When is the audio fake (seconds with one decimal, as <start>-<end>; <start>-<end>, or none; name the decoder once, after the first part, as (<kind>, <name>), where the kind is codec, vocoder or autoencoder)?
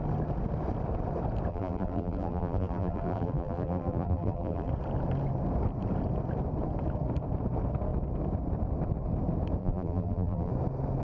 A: 1.5-4.7 (vocoder, BigVGAN v2); 9.6-10.5